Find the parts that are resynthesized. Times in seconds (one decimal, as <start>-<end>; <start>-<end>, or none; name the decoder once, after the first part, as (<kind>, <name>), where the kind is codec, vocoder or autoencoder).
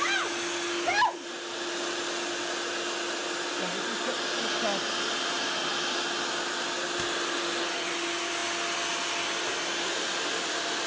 none